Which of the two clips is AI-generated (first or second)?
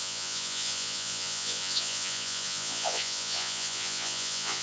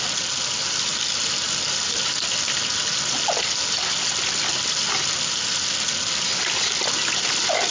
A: first